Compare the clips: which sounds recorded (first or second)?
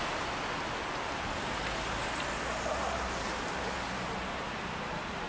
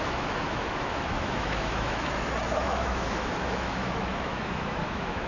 first